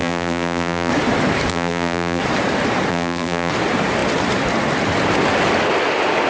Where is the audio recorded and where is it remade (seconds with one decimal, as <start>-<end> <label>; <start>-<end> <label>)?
0.0-0.9 remade; 0.9-1.5 recorded; 1.5-2.2 remade; 2.2-2.9 recorded; 2.9-3.5 remade; 3.5-6.3 recorded